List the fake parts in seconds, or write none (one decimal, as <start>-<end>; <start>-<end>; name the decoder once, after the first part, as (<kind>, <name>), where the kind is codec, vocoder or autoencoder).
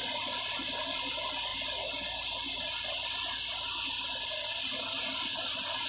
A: 0.0-1.0 (vocoder, BigVGAN v2)